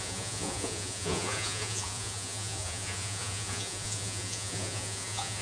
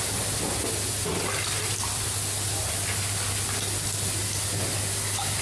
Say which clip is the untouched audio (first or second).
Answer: second